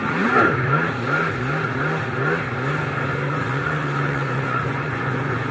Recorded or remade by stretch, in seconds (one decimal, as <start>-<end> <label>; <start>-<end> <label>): 0.0-3.3 recorded; 3.3-5.5 remade